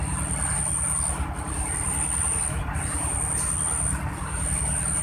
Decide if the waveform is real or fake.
real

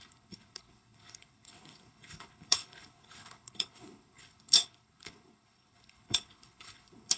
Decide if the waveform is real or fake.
fake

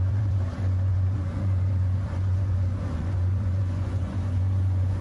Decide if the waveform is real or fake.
fake